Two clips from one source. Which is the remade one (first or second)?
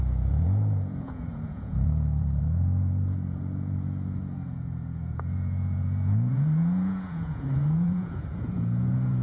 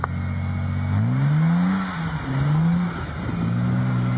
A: first